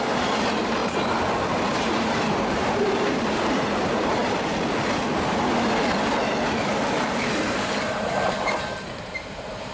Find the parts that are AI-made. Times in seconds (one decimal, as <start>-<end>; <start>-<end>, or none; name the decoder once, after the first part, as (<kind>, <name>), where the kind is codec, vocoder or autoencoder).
0.0-0.8 (vocoder, BigVGAN v2); 1.8-4.2; 7.4-9.7